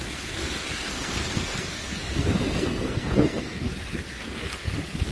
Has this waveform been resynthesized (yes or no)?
yes